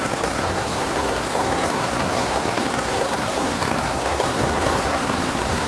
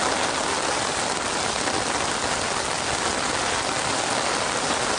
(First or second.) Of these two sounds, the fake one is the first